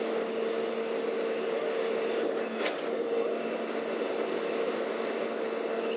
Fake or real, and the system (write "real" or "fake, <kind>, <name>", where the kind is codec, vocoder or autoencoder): real